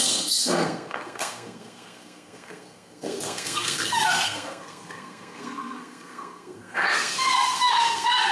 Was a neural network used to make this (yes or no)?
yes